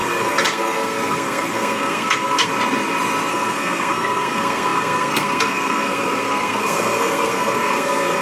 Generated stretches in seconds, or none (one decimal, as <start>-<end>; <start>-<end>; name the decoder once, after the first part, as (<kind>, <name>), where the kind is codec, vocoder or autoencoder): 0.0-2.5 (codec, SNAC); 3.3-8.2